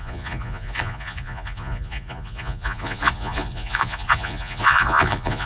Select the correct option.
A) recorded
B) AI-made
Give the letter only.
B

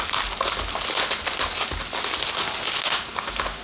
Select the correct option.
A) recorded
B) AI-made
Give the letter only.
A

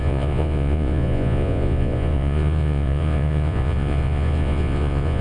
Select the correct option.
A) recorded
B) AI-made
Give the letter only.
B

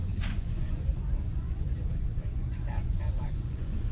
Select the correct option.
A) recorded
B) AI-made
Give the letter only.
B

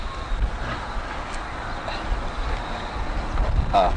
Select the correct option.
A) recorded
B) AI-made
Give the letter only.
A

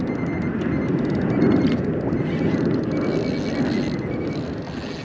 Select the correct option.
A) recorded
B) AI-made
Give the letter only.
A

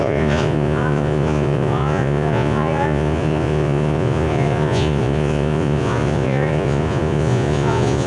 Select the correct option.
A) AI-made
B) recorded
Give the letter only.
A